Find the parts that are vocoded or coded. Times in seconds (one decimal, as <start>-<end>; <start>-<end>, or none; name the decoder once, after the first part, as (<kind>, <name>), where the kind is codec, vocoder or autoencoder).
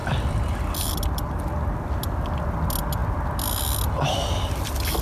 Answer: none